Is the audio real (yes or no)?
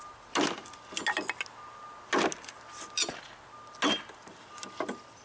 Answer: yes